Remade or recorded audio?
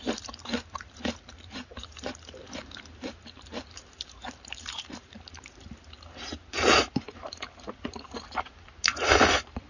remade